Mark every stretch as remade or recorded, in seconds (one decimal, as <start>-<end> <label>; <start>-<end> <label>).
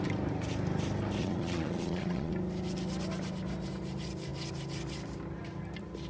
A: 0.0-1.2 recorded; 1.2-2.3 remade; 2.3-6.1 recorded